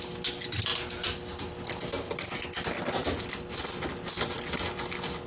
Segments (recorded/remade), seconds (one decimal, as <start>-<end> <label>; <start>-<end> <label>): 0.0-5.3 recorded